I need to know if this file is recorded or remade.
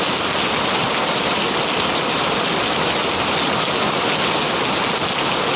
recorded